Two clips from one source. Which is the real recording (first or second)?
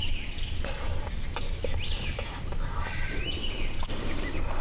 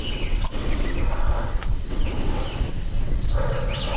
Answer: first